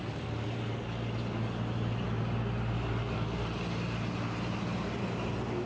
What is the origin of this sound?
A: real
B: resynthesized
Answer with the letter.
A